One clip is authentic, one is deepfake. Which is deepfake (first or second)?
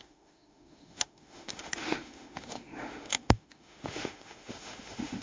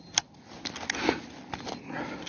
first